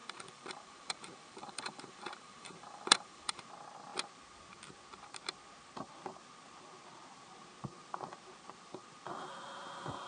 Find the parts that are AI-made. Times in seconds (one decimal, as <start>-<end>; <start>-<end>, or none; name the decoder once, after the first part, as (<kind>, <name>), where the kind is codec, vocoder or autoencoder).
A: 0.0-3.4 (vocoder, BigVGAN v2)